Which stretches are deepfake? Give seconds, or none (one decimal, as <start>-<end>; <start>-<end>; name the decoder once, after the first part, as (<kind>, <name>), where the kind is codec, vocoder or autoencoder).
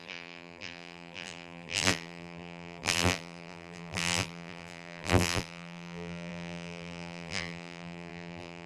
0.0-8.7 (vocoder, BigVGAN v2)